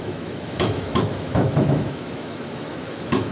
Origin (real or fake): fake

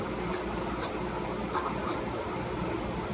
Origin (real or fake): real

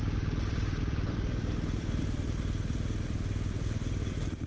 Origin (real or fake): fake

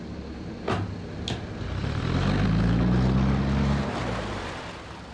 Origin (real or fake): real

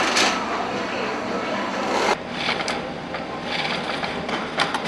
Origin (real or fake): real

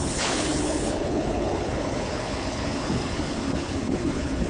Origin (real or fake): fake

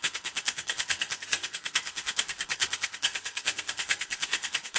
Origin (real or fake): fake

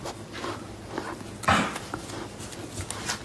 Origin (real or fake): real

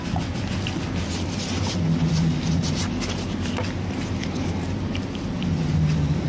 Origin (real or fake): real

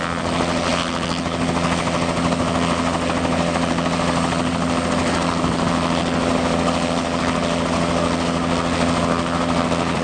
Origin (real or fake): real